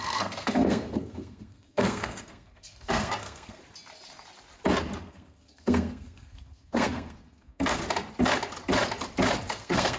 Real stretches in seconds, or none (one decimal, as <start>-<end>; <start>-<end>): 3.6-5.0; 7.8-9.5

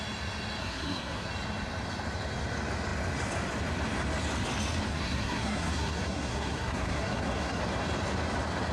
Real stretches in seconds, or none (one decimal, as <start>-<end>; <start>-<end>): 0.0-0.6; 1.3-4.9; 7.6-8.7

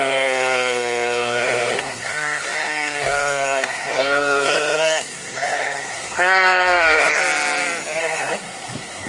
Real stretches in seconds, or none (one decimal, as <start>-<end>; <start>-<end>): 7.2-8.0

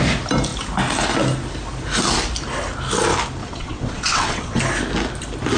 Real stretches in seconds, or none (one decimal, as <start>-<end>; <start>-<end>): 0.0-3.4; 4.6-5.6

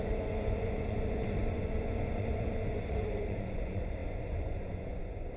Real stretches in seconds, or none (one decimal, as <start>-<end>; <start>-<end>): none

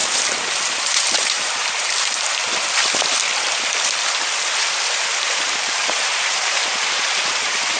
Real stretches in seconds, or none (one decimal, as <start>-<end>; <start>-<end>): 2.4-4.8

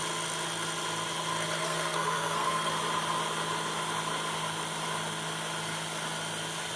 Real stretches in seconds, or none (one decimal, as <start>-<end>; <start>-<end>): 0.0-1.6; 2.7-6.8